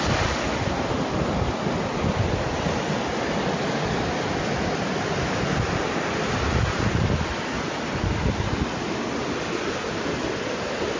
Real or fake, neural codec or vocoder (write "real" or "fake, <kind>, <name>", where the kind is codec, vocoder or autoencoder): real